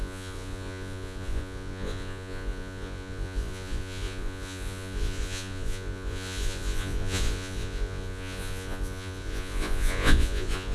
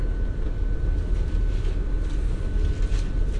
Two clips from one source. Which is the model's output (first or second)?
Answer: first